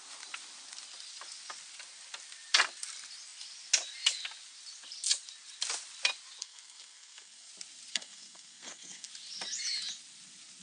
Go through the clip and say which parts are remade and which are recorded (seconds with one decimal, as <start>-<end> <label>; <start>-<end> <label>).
0.0-6.4 recorded; 6.4-7.5 remade; 7.5-7.9 recorded; 7.9-9.1 remade; 9.1-10.6 recorded